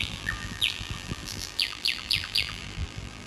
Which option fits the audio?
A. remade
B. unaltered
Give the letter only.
A